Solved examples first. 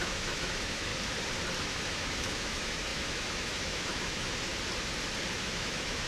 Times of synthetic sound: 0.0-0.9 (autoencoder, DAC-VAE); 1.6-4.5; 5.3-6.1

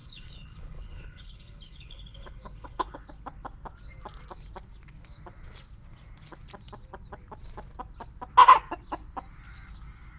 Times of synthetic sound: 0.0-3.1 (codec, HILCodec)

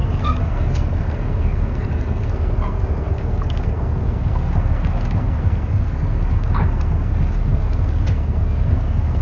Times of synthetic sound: 0.0-9.2 (codec, SNAC)